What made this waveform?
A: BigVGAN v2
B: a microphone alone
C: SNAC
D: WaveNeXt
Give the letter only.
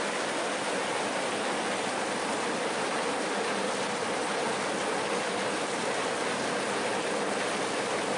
B